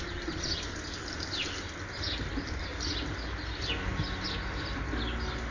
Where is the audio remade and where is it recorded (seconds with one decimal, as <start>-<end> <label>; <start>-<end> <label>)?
0.0-5.5 recorded